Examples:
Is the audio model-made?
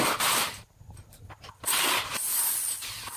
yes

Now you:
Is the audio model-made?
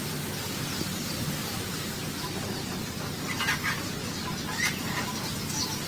yes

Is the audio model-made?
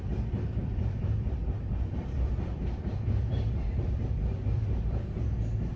yes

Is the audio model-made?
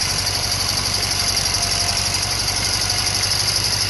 yes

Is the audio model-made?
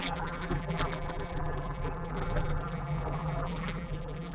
yes